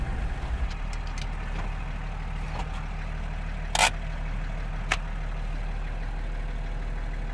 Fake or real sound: real